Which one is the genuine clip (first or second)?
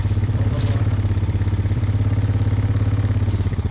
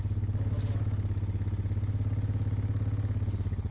second